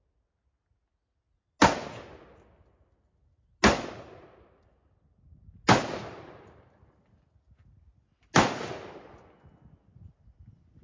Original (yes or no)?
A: yes